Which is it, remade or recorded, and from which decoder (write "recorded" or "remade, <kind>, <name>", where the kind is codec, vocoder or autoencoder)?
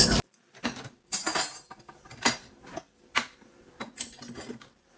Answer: recorded